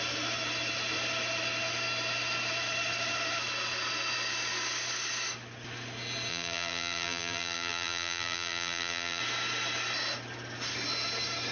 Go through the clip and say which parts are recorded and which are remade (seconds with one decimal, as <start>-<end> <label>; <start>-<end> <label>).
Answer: 0.0-6.3 recorded; 6.3-9.2 remade; 9.2-11.5 recorded